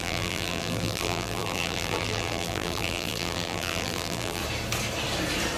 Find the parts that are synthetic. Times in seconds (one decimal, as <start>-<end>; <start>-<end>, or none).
0.0-4.4